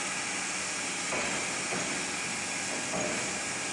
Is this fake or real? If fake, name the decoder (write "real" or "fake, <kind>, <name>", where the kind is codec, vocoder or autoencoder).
real